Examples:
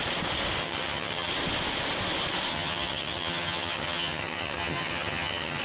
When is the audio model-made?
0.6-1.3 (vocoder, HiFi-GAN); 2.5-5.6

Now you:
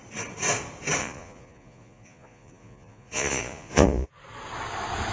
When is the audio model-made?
1.0-4.1 (vocoder, Vocos)

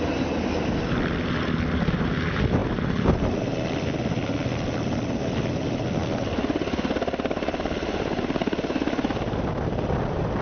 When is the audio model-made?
none